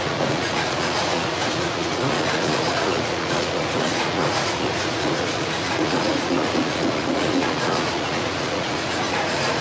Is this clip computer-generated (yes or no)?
yes